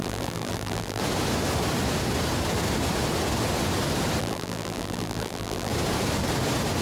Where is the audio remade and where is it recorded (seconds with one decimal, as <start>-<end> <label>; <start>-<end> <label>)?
0.0-1.0 remade; 1.0-4.2 recorded; 4.2-5.7 remade; 5.7-6.8 recorded